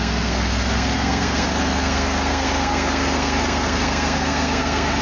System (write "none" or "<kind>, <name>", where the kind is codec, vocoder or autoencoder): codec, SNAC